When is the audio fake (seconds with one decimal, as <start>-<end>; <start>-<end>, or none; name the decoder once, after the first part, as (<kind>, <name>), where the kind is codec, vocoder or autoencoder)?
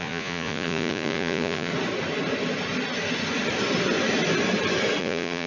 0.0-1.7 (vocoder, Vocos); 5.0-5.5